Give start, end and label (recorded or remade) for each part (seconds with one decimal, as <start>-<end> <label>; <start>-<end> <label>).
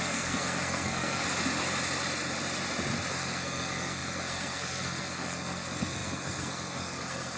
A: 0.0-1.2 remade; 1.2-3.1 recorded; 3.1-7.4 remade